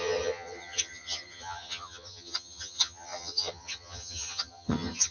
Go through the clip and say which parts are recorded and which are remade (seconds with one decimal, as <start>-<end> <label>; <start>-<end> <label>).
0.0-5.1 remade